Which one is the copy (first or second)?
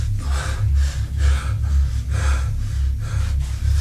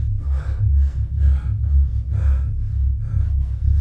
second